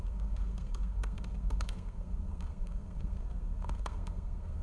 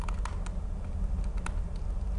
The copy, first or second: first